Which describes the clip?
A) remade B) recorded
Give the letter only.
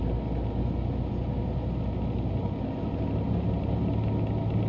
B